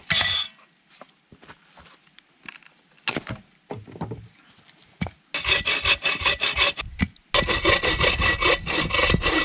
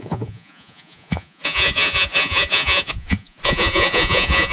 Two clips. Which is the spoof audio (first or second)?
second